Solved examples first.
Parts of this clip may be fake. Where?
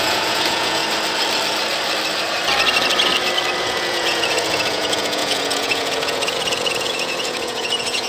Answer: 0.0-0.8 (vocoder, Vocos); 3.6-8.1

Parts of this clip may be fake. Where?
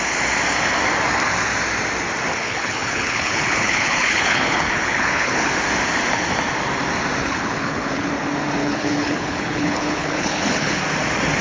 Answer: 2.3-5.5 (codec, HILCodec); 7.2-8.1; 8.6-10.8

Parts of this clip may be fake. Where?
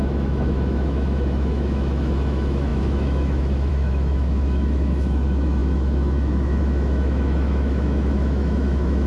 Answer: 0.0-9.1 (autoencoder, DAC-VAE)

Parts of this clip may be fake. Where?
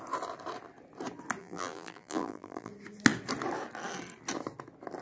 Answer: 1.4-2.7 (vocoder, BigVGAN v2)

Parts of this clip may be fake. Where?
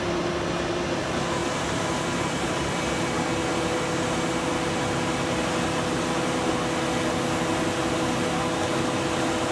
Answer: none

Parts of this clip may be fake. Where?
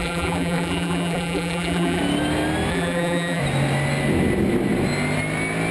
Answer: 0.0-2.0 (vocoder, BigVGAN v2); 2.7-3.4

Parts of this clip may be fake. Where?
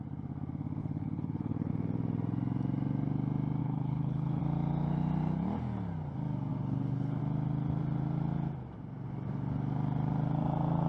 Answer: 0.8-1.7 (codec, HILCodec); 3.6-4.4; 6.5-7.2